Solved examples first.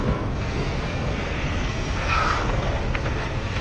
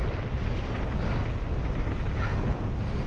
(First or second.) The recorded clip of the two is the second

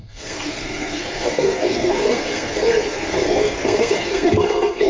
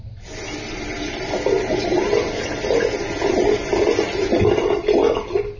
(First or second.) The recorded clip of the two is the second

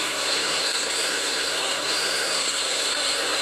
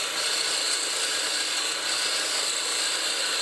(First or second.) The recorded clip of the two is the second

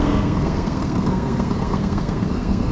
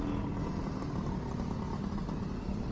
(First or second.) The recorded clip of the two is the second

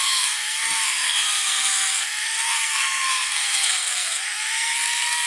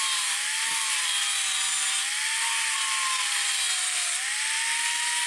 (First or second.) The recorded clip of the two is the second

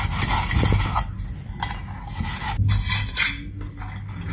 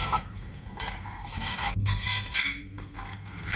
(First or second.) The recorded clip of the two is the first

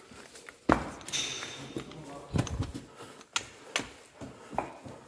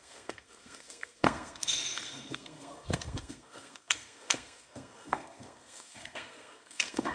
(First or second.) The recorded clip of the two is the first